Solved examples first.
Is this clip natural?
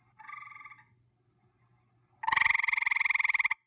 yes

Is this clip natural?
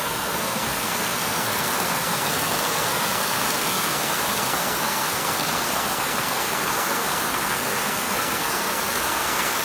no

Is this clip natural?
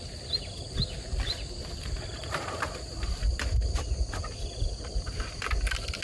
yes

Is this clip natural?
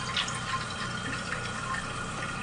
yes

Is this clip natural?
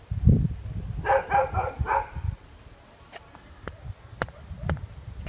yes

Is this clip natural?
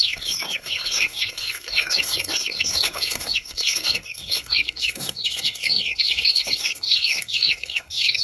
no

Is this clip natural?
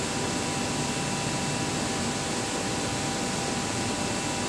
yes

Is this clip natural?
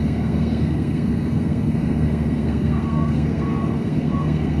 no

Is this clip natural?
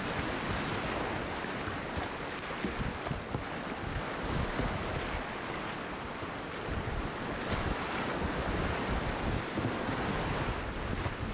yes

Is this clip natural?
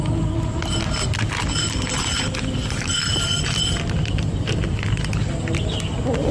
yes